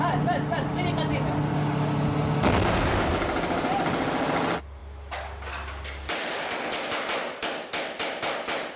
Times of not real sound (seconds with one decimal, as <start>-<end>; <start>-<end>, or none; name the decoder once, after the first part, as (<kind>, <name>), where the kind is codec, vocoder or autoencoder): none